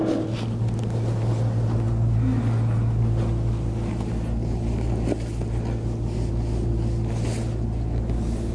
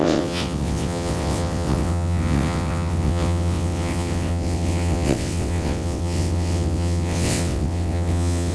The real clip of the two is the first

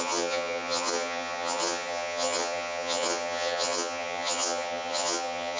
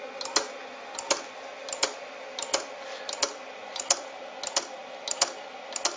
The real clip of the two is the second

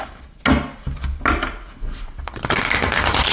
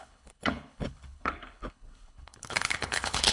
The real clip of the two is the first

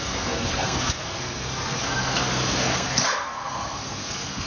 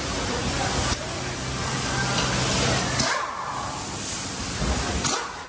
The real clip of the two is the second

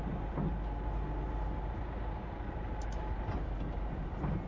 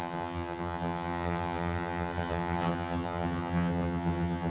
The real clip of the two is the first